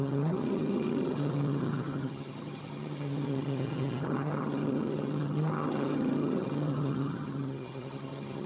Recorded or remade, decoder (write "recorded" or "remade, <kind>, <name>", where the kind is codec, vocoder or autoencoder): remade, vocoder, HiFi-GAN